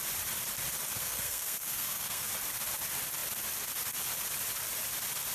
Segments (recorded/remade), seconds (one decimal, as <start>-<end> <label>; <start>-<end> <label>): 0.0-1.0 recorded; 1.0-2.3 remade; 2.3-5.3 recorded